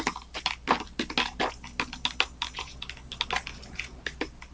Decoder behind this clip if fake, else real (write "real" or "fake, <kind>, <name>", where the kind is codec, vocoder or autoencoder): real